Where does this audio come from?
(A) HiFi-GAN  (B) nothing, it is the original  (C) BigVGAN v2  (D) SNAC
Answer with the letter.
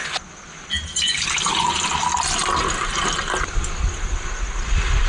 B